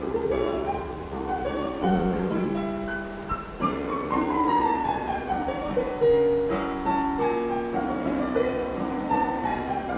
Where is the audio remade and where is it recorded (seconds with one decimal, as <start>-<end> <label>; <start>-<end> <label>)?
0.0-2.5 remade; 2.5-3.5 recorded; 3.5-5.9 remade; 5.9-7.8 recorded; 7.8-10.0 remade